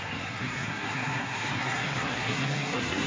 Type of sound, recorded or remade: remade